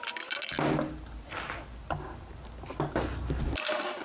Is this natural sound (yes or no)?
yes